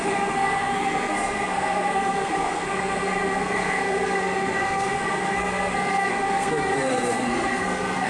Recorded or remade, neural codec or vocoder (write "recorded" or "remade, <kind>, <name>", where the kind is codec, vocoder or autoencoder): remade, codec, SNAC